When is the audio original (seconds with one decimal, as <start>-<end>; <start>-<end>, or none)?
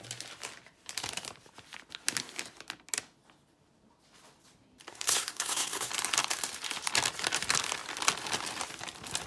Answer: 0.0-4.9; 5.9-9.3